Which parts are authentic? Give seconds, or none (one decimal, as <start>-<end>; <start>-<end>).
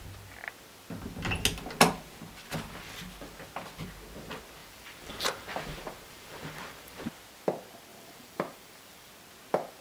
0.0-4.6; 7.0-7.9; 9.1-9.8